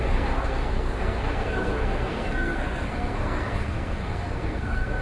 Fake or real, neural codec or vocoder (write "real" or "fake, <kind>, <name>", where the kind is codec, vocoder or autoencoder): fake, codec, SNAC